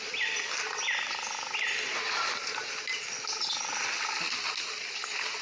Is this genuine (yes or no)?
yes